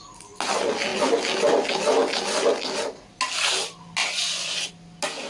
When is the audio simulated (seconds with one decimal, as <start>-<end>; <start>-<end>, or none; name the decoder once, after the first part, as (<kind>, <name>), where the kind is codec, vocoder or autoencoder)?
4.0-4.7 (vocoder, Vocos)